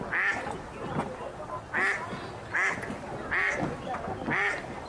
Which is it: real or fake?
real